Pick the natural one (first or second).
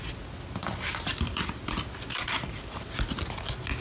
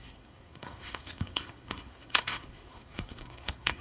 first